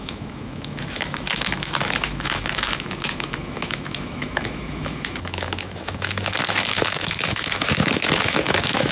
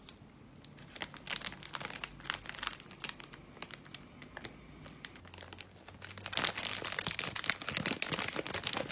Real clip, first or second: second